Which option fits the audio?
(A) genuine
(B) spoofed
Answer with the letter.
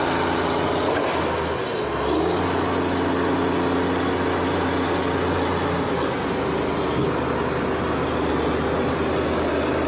A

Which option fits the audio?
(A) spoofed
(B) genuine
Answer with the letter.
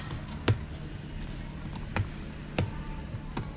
B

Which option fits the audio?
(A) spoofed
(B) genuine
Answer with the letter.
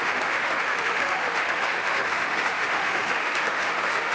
A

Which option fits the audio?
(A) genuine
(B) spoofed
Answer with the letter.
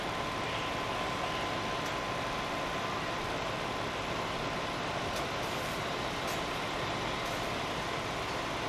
A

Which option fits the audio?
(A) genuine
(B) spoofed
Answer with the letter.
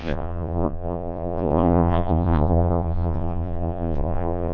B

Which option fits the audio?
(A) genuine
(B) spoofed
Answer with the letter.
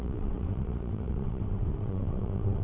B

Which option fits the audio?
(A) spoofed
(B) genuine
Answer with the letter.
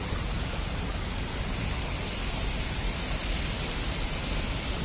B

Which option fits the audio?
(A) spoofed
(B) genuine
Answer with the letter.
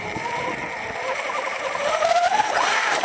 A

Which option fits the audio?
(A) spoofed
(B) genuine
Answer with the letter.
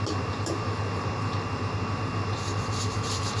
A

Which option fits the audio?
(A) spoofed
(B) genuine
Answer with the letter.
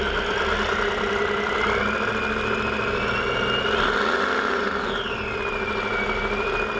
B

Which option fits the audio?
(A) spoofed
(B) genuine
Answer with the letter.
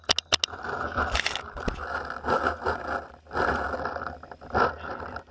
B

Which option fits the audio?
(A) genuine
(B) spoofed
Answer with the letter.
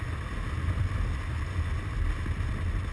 A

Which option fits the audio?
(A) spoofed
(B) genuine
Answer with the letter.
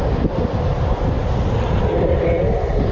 B